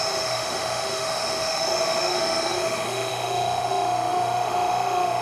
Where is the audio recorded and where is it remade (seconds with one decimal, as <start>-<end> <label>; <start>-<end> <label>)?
0.0-5.2 remade